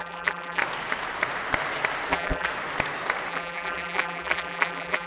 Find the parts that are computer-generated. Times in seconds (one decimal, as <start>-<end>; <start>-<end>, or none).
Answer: 0.0-0.6; 2.1-2.5; 3.3-5.1